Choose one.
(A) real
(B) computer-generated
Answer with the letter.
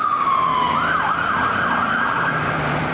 B